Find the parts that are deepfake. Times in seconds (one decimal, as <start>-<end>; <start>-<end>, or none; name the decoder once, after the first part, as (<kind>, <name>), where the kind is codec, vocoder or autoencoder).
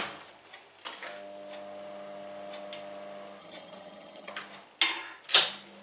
3.4-4.3 (vocoder, HiFi-GAN)